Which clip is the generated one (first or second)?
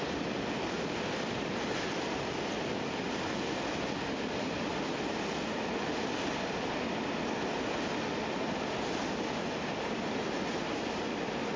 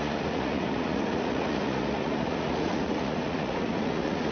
second